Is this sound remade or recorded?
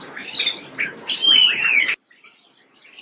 recorded